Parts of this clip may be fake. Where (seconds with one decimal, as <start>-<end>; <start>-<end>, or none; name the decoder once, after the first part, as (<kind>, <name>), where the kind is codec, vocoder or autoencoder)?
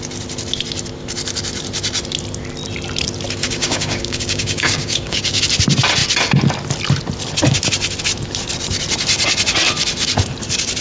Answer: 3.4-5.4 (codec, DAC)